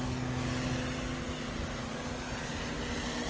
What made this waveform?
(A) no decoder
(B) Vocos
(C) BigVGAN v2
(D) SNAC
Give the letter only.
A